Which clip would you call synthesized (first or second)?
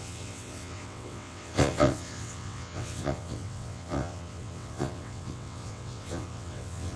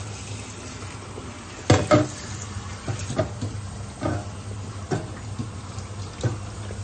first